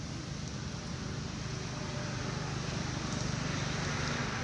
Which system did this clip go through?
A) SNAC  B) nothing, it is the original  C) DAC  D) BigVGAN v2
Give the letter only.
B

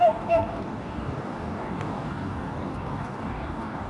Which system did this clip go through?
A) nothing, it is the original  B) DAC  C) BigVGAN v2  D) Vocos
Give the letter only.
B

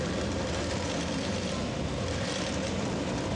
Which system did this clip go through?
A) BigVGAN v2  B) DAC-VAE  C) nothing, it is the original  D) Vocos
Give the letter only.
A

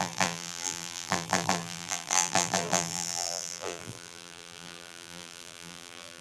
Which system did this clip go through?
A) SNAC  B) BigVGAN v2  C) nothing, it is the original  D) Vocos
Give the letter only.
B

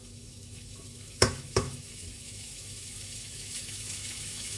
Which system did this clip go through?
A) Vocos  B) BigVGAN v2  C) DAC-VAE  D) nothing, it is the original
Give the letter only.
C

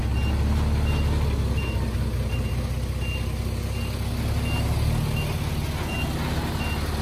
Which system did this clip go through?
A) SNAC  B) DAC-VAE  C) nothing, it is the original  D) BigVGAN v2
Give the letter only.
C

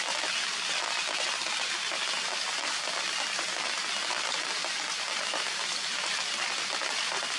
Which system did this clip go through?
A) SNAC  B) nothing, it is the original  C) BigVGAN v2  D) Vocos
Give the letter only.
B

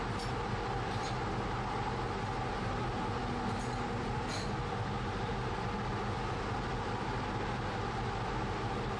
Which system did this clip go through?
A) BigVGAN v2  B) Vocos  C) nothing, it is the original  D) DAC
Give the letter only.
C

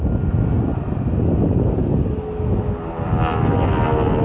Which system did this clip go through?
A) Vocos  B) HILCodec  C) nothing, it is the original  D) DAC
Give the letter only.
C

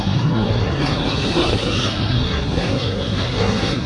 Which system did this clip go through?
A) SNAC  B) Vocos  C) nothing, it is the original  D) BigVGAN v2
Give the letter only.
A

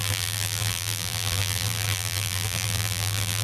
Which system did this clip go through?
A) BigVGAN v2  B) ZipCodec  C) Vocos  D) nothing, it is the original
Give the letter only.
A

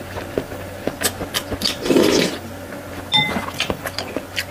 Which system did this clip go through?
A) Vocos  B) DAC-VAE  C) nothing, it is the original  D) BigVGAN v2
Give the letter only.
C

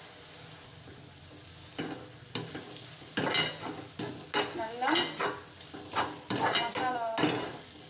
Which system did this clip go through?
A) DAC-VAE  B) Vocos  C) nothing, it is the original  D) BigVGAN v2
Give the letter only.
C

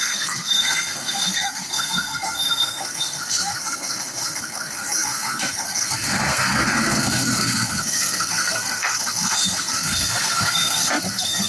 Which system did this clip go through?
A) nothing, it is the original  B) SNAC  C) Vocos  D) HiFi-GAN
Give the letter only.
B